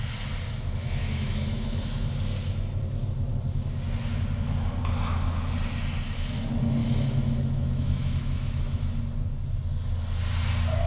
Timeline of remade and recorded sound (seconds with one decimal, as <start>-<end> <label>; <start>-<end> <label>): 0.0-1.0 recorded; 1.0-2.1 remade; 2.1-6.8 recorded; 6.8-9.0 remade; 9.0-10.9 recorded